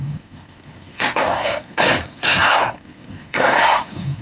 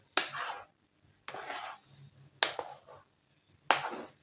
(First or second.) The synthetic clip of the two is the first